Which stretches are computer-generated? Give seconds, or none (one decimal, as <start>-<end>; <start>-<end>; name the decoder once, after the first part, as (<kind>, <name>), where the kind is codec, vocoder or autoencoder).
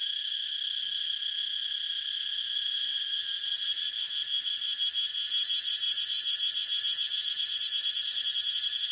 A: 0.0-1.1 (autoencoder, DAC-VAE)